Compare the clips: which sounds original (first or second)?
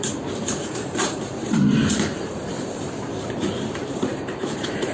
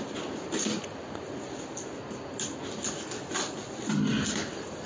second